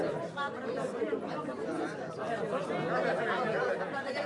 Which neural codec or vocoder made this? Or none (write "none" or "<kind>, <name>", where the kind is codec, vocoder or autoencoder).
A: none